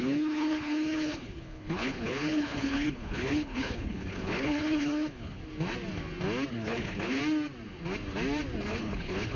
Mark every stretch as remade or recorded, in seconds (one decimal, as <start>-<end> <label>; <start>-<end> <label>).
0.0-5.4 remade; 5.4-6.5 recorded; 6.5-7.2 remade; 7.2-8.7 recorded; 8.7-9.4 remade